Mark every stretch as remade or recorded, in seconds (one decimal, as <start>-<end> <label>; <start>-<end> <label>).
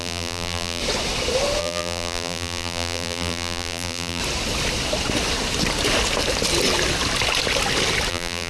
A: 0.0-0.8 remade; 0.8-1.6 recorded; 1.6-4.2 remade; 4.2-8.1 recorded; 8.1-8.5 remade